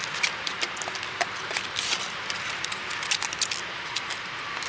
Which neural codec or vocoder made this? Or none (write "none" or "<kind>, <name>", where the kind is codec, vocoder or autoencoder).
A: none